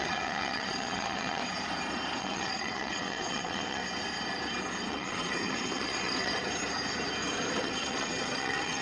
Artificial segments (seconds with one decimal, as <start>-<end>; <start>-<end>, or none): 0.0-1.4; 2.2-3.8; 4.9-6.4; 7.5-8.8